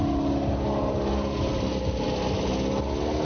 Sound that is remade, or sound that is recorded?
recorded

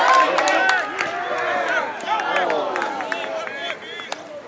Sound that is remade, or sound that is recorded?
recorded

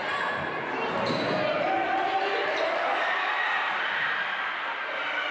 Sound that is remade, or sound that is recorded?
recorded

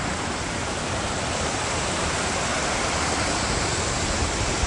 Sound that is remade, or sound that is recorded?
recorded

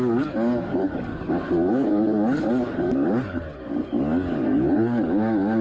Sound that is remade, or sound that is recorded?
remade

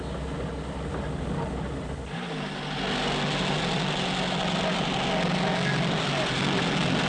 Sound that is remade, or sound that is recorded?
recorded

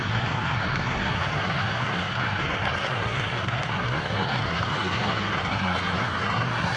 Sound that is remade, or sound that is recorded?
remade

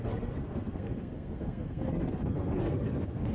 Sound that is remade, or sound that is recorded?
remade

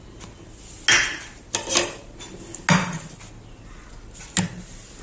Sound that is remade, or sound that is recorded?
recorded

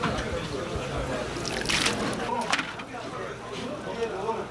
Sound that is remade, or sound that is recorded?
recorded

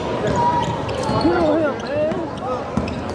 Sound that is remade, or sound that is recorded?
recorded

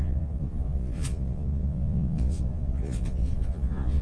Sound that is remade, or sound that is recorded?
remade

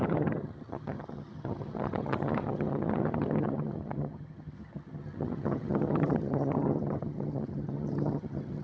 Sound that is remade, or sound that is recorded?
remade